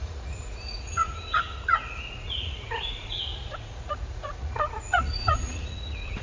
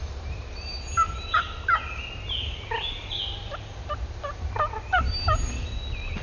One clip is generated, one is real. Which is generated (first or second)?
first